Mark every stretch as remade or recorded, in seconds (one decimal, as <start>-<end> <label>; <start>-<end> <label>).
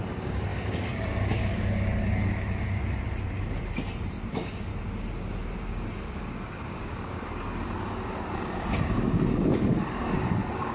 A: 0.0-2.8 remade; 2.8-4.3 recorded; 4.3-4.7 remade; 4.7-5.6 recorded; 5.6-10.7 remade